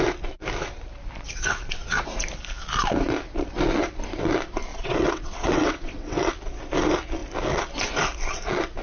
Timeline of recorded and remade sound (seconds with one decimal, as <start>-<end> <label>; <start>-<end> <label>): 0.0-4.7 recorded; 4.7-6.3 remade; 6.3-8.8 recorded